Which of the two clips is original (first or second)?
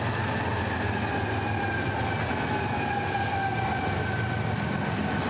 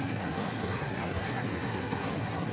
first